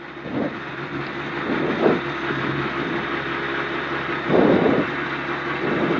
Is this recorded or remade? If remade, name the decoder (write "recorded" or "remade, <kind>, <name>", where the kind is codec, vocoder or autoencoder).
recorded